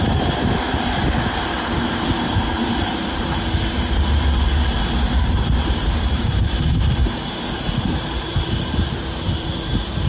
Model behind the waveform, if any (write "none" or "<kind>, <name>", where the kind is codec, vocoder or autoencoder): vocoder, BigVGAN v2